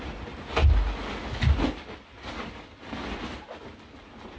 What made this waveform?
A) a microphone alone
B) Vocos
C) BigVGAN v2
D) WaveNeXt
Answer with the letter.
A